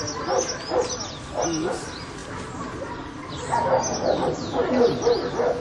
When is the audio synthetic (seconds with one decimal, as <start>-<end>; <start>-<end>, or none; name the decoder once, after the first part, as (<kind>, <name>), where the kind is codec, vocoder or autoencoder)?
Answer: none